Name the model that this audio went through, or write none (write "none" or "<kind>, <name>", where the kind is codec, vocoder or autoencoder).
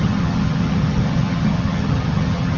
vocoder, HiFi-GAN